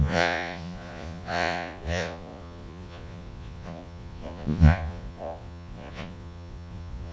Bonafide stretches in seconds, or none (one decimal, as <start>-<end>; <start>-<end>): none